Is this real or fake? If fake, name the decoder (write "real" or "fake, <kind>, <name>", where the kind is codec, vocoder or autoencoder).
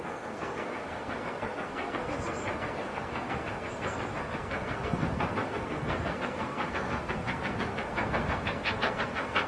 fake, codec, SNAC